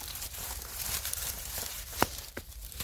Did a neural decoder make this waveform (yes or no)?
yes